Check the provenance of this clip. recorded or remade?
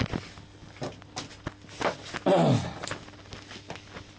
recorded